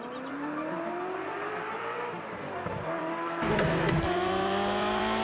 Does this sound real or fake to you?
fake